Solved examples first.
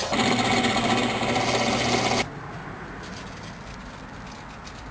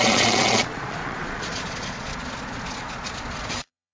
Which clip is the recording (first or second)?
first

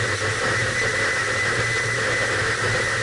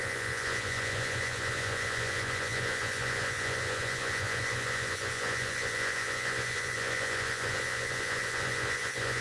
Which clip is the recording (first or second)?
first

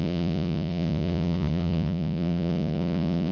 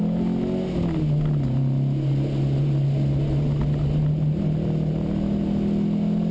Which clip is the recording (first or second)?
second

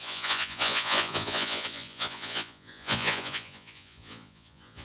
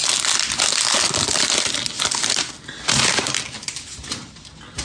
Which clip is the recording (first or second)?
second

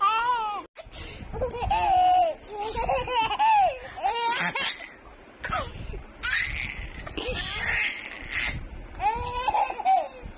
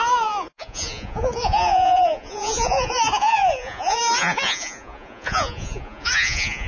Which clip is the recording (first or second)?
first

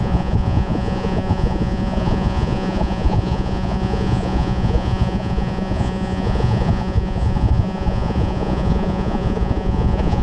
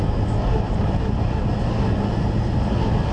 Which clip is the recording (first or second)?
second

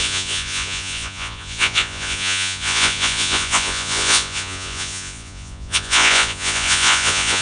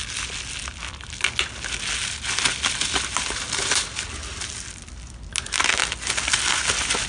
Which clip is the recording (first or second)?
second